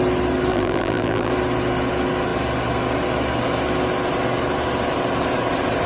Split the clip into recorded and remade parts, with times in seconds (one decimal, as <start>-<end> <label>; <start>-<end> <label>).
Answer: 0.0-0.5 recorded; 0.5-1.3 remade; 1.3-5.9 recorded